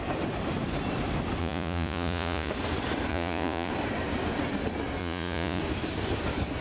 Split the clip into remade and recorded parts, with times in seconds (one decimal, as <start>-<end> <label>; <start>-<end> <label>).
0.0-1.4 recorded; 1.4-2.5 remade; 2.5-3.1 recorded; 3.1-3.7 remade; 3.7-5.0 recorded; 5.0-5.6 remade; 5.6-6.6 recorded